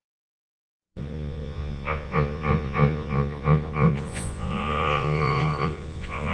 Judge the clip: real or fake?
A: fake